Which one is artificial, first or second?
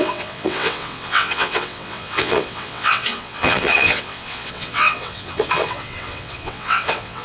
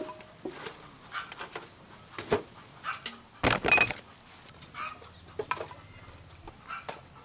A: first